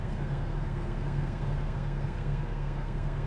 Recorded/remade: remade